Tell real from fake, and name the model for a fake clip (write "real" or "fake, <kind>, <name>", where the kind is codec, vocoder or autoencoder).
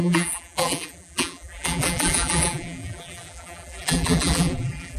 fake, vocoder, BigVGAN v2